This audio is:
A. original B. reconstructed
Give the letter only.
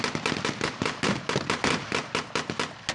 A